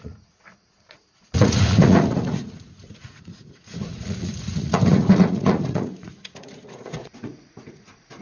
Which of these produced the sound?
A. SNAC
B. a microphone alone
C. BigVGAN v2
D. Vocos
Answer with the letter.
D